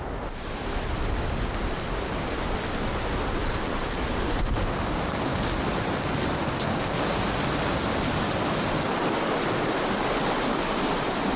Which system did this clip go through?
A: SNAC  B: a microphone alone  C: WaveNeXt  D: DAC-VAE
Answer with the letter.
B